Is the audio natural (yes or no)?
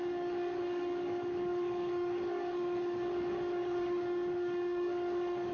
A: no